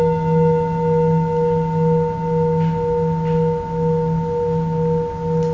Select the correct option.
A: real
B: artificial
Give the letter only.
A